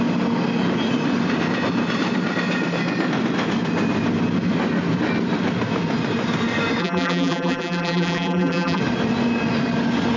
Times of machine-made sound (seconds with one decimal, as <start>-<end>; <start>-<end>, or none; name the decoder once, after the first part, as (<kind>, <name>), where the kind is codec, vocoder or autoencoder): 6.8-8.8 (vocoder, BigVGAN v2)

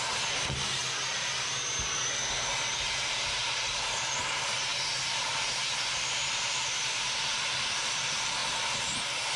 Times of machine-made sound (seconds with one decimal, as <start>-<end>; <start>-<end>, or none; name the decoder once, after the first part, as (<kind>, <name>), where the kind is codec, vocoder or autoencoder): 0.0-0.8 (vocoder, BigVGAN v2); 1.9-9.4